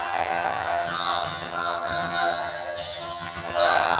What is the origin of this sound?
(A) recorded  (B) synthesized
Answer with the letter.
B